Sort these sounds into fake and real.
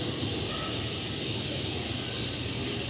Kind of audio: real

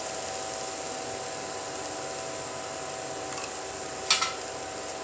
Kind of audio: real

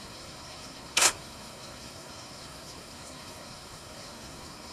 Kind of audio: fake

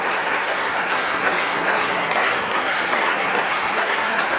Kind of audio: fake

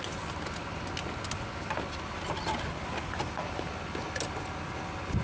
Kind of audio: real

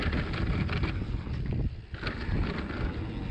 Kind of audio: real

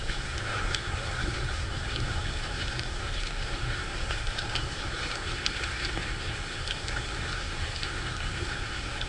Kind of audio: fake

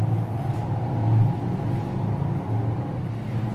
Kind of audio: real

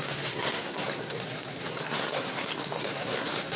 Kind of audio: fake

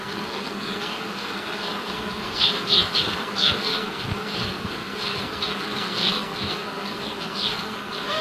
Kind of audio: fake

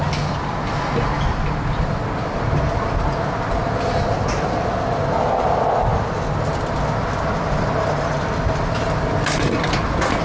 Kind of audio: real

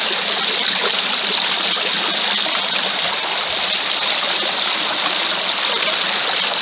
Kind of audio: real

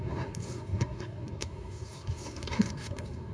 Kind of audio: fake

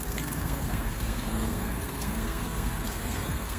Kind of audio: fake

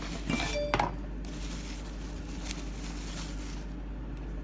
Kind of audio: real